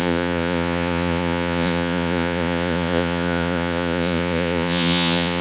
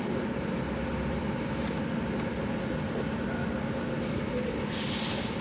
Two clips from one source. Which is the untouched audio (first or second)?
second